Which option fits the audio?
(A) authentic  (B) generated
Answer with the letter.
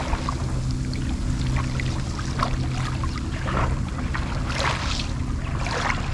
A